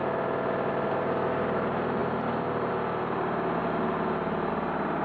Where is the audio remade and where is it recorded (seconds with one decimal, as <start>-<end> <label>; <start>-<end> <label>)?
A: 0.0-5.0 recorded